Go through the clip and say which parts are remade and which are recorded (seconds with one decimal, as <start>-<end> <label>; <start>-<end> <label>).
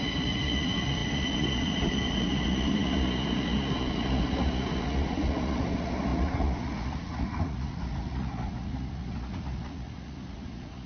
0.0-10.9 remade